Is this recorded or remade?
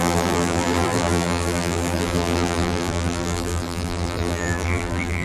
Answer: remade